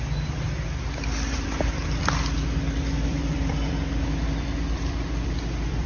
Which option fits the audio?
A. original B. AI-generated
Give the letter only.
B